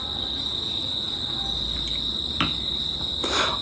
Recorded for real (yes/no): yes